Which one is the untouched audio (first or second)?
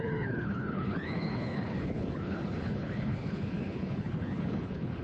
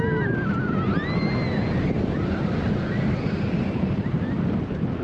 second